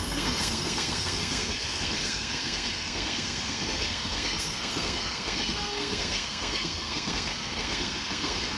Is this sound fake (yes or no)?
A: yes